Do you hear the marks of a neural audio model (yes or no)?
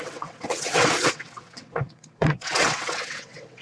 yes